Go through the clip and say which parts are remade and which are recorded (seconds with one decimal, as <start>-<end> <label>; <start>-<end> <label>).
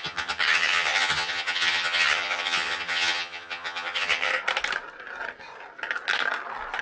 0.0-4.3 remade; 4.3-6.8 recorded